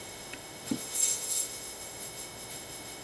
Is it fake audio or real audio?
fake